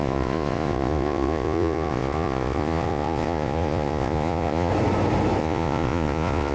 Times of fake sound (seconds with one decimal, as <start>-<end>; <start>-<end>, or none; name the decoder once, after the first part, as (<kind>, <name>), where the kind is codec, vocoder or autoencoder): 0.0-4.7 (vocoder, Vocos); 5.4-6.5